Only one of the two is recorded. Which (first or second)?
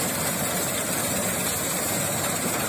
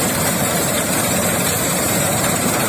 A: first